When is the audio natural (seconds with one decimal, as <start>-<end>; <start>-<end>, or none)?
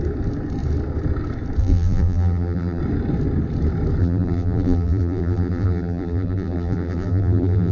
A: 0.0-1.6; 2.8-4.0